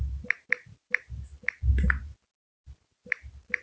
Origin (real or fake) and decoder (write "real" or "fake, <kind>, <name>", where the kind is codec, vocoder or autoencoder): real